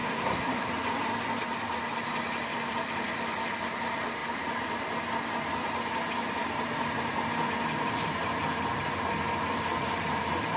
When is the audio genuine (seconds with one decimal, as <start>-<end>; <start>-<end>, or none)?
0.7-10.6